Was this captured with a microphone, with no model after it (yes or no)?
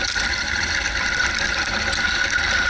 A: yes